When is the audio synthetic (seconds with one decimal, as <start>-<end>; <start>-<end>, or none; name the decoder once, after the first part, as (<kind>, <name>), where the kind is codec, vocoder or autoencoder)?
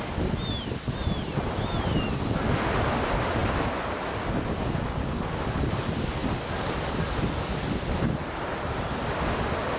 1.3-2.3 (vocoder, BigVGAN v2); 6.2-9.0